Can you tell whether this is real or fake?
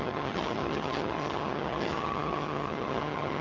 fake